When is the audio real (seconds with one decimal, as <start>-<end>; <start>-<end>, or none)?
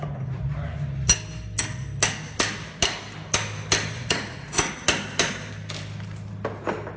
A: 0.0-3.9; 4.7-7.0